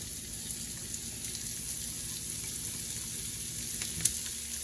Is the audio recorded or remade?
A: recorded